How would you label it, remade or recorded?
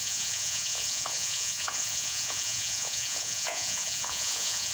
remade